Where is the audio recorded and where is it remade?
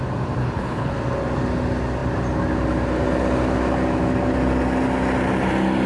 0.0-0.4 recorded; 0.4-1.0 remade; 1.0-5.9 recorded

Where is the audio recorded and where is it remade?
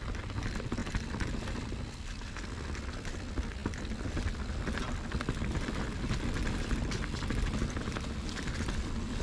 0.0-9.2 recorded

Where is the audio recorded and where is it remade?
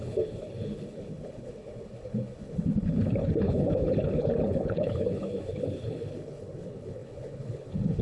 0.0-8.0 remade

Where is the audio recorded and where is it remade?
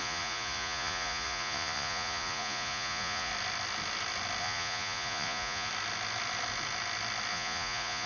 0.0-3.3 remade; 3.3-4.4 recorded; 4.4-5.7 remade; 5.7-7.3 recorded; 7.3-8.1 remade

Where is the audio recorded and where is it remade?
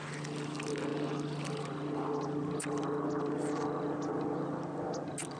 0.0-5.4 recorded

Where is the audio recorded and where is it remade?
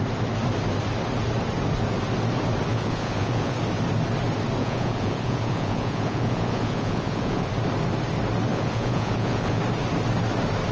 0.0-2.7 recorded; 2.7-3.5 remade; 3.5-4.6 recorded; 4.6-7.5 remade; 7.5-8.5 recorded; 8.5-9.6 remade; 9.6-10.7 recorded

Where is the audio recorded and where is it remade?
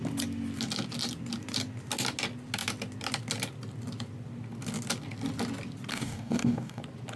0.0-5.9 recorded; 5.9-6.8 remade; 6.8-7.2 recorded